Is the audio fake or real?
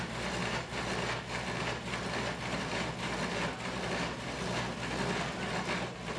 real